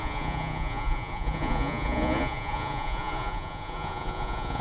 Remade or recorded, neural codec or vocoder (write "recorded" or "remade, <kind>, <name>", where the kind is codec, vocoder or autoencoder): remade, vocoder, Vocos